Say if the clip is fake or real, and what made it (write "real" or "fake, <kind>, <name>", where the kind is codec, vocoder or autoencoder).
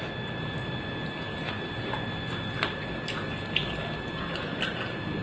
real